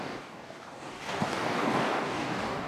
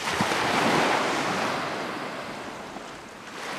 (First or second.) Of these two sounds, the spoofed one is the first